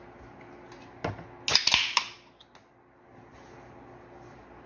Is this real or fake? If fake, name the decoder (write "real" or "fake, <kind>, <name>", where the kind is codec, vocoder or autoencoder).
real